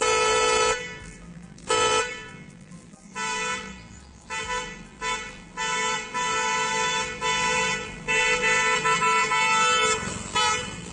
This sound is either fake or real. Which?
fake